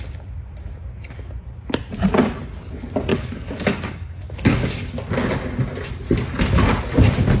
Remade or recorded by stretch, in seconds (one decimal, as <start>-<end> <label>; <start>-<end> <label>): 0.0-3.1 recorded; 3.1-4.7 remade; 4.7-7.4 recorded